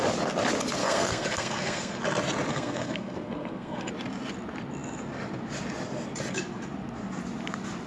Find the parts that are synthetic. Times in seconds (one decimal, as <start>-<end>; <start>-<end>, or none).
0.8-2.0; 2.5-3.9